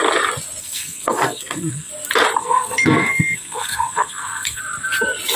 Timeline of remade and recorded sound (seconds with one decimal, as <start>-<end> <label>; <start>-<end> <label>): 0.0-0.6 recorded; 0.6-1.9 remade; 1.9-2.4 recorded; 2.4-4.6 remade; 4.6-5.4 recorded